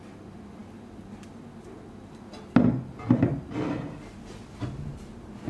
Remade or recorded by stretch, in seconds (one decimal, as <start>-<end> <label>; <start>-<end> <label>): 0.0-5.5 recorded